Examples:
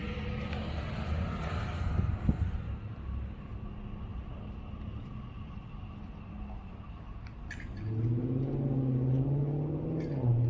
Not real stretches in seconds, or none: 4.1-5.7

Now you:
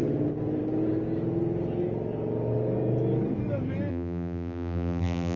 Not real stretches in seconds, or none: 3.9-5.4

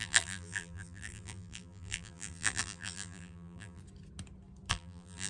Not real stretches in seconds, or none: 0.0-3.8; 4.7-5.3

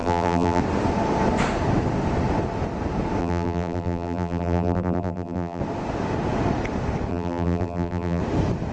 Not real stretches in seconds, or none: 0.0-0.6; 3.2-5.6; 7.1-8.2

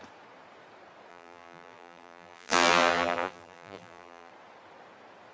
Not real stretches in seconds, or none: 1.1-4.3

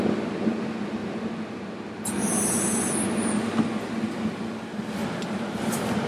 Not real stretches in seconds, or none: none